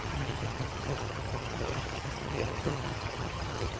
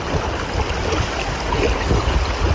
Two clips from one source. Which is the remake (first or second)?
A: first